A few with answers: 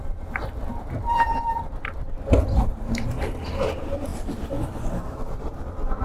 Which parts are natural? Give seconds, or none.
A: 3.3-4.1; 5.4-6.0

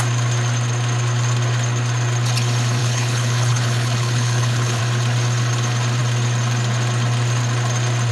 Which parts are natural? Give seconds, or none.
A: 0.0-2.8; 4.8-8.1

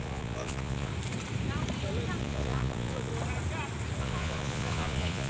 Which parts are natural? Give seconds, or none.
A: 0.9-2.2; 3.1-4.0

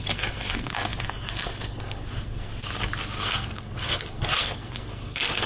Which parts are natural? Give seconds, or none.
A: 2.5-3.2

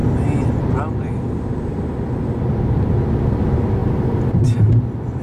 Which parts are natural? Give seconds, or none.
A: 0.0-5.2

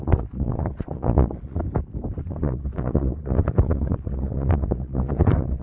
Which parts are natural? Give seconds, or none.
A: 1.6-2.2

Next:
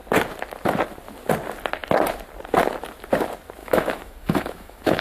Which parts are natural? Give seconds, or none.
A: 0.0-3.6

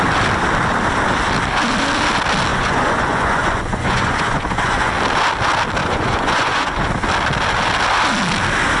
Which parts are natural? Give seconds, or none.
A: 0.0-2.5; 4.9-5.8; 6.9-8.8